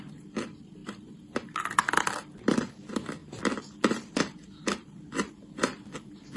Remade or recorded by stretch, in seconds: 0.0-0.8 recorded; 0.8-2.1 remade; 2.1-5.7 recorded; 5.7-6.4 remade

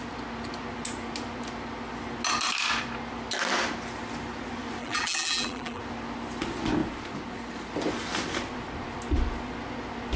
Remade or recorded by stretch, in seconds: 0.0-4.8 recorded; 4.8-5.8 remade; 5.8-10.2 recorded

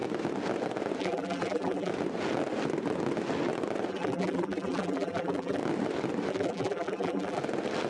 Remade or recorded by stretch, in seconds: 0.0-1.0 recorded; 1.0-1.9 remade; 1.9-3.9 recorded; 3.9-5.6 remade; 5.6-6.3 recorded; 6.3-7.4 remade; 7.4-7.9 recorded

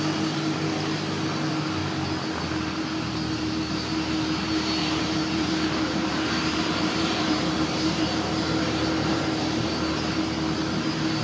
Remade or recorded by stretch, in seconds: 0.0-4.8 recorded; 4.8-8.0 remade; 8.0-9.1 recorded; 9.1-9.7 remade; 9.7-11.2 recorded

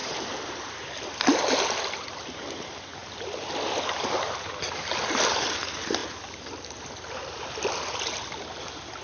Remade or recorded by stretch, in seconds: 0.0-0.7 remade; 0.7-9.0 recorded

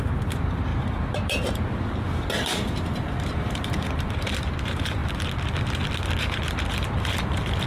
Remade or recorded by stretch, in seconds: 0.0-5.0 remade; 5.0-6.2 recorded; 6.2-7.7 remade